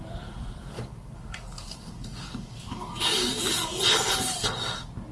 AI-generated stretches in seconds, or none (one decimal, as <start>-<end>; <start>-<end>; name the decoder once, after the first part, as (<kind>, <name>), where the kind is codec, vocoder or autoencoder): 0.7-3.8 (codec, DAC)